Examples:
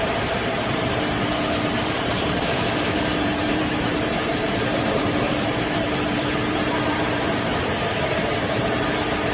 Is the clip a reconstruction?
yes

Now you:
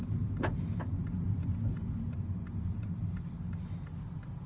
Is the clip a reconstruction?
no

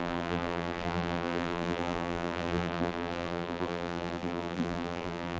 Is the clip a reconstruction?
yes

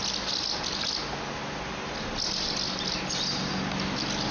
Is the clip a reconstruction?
no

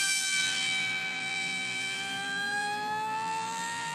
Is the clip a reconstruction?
yes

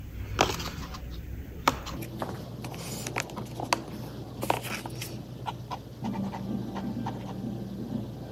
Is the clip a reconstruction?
no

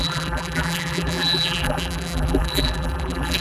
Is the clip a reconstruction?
yes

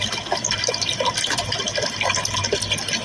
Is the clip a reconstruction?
no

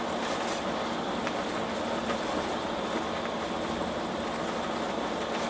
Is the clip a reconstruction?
no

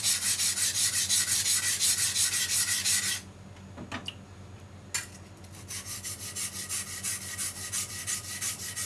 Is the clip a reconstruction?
no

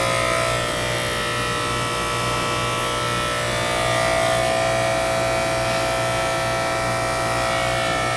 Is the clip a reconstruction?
no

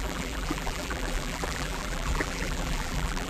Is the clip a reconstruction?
yes